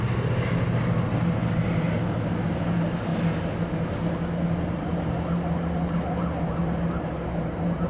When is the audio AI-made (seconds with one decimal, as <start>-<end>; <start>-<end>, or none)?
none